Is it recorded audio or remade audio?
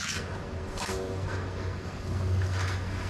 remade